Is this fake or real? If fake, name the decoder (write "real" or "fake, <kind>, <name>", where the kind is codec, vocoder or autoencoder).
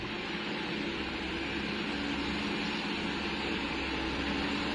real